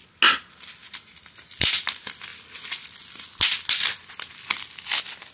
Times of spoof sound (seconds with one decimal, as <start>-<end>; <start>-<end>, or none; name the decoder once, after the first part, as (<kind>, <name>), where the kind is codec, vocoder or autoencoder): none